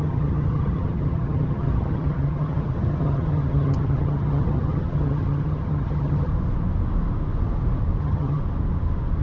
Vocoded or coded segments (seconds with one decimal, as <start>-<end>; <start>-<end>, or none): 0.0-6.3; 8.0-8.4